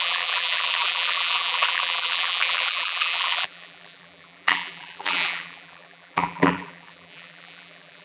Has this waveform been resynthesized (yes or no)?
yes